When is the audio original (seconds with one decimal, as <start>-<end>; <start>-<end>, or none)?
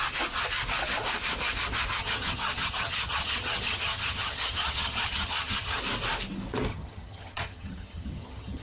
0.0-2.0; 5.8-6.7